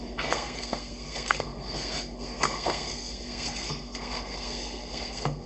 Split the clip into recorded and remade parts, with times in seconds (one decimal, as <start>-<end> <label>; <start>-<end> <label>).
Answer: 0.0-5.5 remade